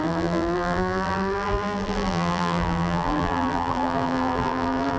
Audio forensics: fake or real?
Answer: fake